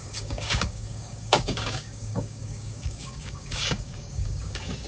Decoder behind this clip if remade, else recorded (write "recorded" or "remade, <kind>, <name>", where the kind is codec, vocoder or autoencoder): remade, codec, DAC